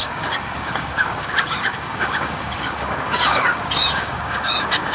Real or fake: fake